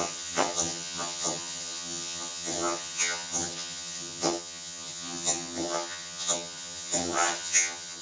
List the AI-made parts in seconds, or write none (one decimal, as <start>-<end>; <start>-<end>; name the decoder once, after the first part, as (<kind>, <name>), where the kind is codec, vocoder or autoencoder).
0.0-8.0 (vocoder, HiFi-GAN)